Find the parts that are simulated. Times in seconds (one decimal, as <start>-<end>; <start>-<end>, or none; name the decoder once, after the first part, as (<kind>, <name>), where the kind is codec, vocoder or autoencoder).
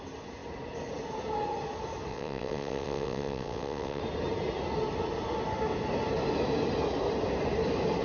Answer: 2.1-4.0 (vocoder, WaveNeXt)